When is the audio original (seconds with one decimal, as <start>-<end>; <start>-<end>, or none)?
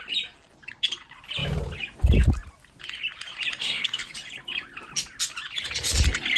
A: 0.0-3.6; 4.1-6.4